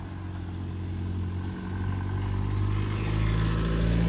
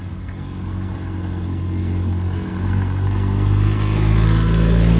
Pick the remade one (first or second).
second